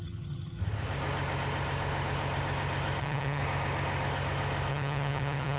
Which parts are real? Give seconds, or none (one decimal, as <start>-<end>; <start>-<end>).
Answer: 0.6-3.0; 3.4-4.7